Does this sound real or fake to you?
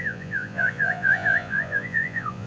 fake